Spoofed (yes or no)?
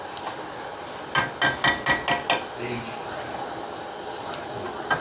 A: no